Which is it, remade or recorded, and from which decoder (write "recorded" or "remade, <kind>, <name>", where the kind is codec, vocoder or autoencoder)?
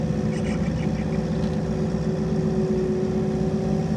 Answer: recorded